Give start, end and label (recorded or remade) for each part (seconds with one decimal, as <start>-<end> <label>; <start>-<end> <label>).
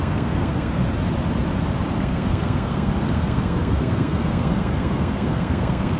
0.0-0.8 remade; 0.8-2.0 recorded; 2.0-6.0 remade